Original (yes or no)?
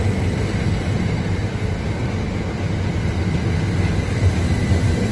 yes